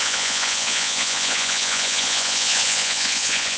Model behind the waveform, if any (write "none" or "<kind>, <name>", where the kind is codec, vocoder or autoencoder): vocoder, Vocos